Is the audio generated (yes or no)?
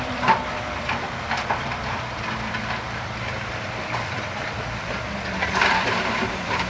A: yes